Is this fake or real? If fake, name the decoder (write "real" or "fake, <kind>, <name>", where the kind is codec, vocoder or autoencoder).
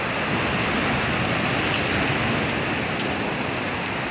real